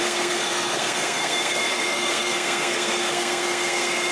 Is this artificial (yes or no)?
yes